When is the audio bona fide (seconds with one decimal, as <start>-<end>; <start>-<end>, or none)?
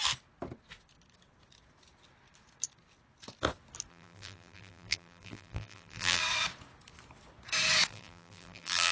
0.0-3.9; 6.2-7.9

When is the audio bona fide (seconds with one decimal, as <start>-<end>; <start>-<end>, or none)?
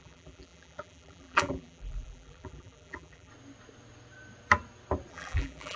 3.3-5.1